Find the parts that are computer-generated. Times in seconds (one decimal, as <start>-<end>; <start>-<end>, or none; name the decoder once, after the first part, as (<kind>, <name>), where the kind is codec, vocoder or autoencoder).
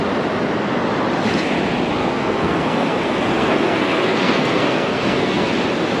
2.0-5.5 (codec, SNAC)